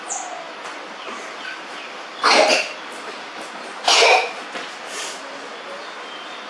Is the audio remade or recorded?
recorded